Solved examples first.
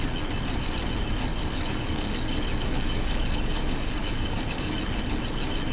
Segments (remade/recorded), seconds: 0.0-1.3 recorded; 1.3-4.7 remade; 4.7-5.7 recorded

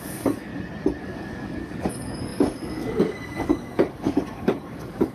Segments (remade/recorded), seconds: 0.0-0.5 remade; 0.5-1.0 recorded; 1.0-5.1 remade

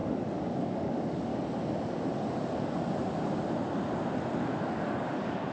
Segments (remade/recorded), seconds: 0.0-1.3 remade; 1.3-4.6 recorded; 4.6-5.5 remade

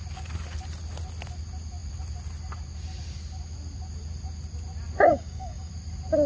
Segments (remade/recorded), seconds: 0.0-5.1 recorded; 5.1-5.7 remade; 5.7-6.3 recorded